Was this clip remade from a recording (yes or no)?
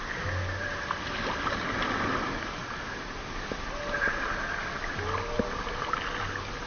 no